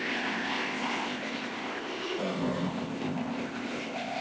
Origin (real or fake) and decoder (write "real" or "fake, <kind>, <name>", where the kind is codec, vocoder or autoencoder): fake, codec, ZipCodec